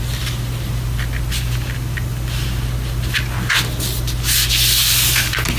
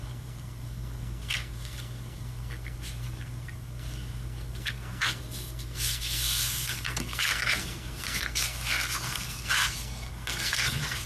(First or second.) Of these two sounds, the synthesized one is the second